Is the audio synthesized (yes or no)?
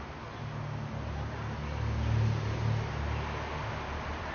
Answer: no